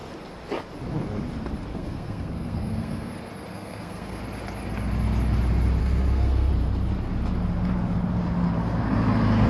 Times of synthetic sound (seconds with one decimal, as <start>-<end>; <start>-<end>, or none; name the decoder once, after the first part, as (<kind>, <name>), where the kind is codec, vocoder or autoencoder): 1.7-3.1 (codec, SNAC); 3.5-4.2; 5.8-6.5